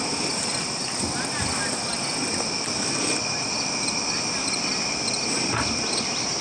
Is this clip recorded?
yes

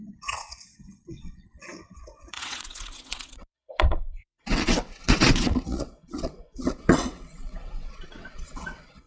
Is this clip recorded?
no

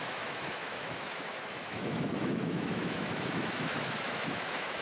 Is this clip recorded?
no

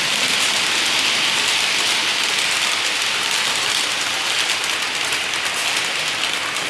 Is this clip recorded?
yes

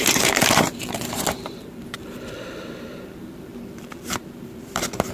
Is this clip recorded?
no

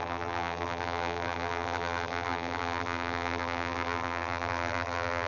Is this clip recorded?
no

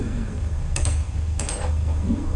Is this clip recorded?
no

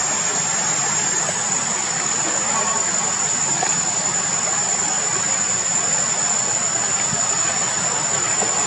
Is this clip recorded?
yes